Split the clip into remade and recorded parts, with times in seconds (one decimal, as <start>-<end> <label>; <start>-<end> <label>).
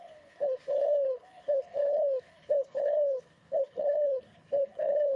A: 0.0-5.2 remade